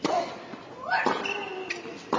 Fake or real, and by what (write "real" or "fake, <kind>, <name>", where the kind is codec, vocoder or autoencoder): real